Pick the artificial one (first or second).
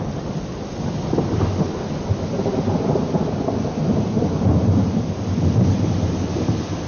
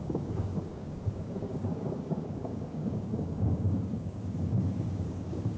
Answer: second